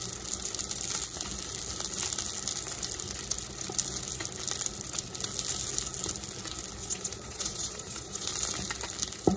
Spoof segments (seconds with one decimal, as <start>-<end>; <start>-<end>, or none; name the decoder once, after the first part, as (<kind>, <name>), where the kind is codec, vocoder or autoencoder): 6.8-8.3 (vocoder, Vocos)